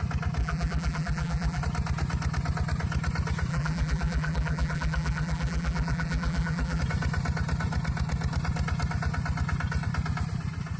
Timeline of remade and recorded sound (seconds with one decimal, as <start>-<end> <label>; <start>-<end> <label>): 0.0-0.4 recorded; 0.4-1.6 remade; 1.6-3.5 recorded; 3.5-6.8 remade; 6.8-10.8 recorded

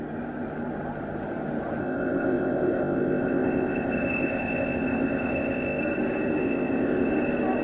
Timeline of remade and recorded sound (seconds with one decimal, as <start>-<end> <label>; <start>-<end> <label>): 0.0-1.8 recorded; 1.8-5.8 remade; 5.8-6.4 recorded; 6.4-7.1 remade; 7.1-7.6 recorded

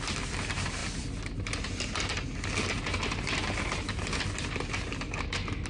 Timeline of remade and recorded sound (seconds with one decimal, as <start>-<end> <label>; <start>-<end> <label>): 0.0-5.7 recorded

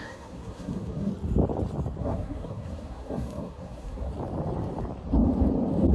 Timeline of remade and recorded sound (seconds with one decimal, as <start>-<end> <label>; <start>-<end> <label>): 0.0-1.1 remade; 1.1-2.0 recorded; 2.0-4.1 remade; 4.1-5.9 recorded

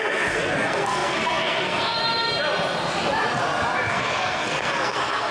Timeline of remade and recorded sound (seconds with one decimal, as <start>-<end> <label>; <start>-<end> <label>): 0.0-2.0 remade; 2.0-3.9 recorded; 3.9-5.3 remade